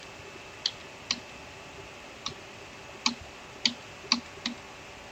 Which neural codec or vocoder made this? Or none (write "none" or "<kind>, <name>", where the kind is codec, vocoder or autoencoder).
none